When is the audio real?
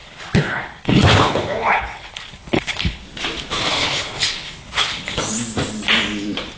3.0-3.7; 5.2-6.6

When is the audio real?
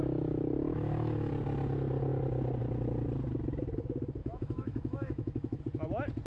0.0-0.7; 1.3-4.2; 5.6-6.3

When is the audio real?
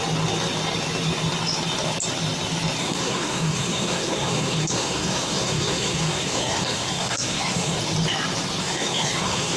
0.0-2.8; 7.8-8.6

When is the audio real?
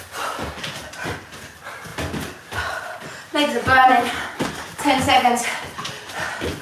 0.0-6.6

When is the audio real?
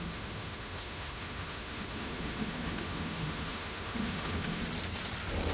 4.6-5.5